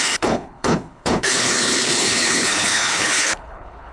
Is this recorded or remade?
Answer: remade